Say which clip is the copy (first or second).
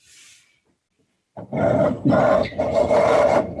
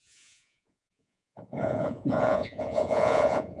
second